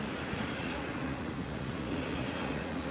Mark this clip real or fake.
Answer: fake